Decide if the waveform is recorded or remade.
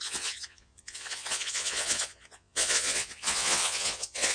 remade